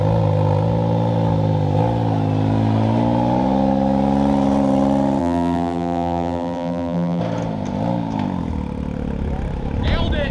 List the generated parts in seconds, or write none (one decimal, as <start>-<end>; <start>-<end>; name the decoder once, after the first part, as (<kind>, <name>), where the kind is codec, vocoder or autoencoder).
5.2-7.2 (vocoder, BigVGAN v2)